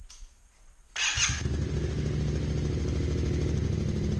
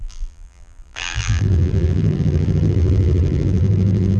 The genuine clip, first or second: first